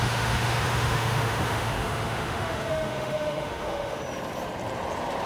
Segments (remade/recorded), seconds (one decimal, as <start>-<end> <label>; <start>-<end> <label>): 0.0-4.0 remade; 4.0-5.3 recorded